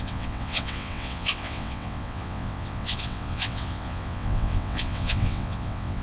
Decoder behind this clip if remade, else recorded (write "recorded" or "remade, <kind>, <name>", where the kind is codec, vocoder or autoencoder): remade, vocoder, WaveNeXt